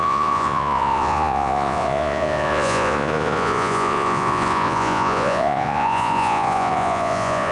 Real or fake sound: fake